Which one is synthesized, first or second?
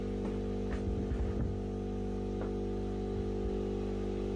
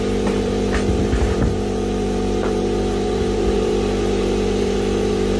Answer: second